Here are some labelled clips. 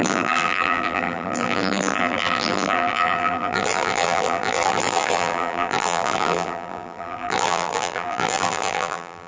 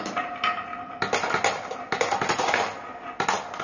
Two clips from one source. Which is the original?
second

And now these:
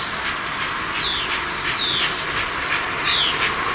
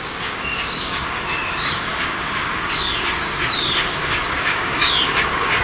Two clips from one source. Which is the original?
first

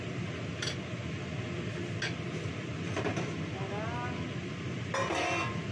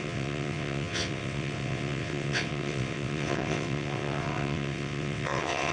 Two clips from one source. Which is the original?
first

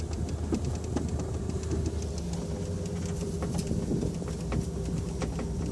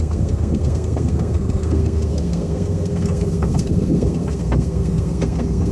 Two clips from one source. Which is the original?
first